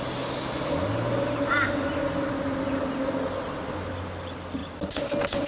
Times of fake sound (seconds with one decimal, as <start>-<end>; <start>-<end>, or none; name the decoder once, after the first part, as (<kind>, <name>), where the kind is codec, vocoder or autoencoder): none